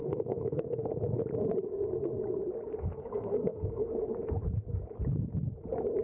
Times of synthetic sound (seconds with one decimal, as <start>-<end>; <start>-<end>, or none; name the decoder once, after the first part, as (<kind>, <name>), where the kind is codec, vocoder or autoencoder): 0.0-0.9 (codec, SNAC); 2.8-3.9